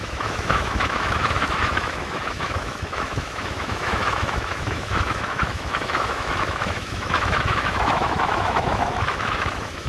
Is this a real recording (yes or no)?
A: no